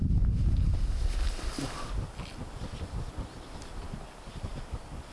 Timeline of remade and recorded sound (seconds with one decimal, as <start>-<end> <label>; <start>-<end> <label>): 0.0-5.1 recorded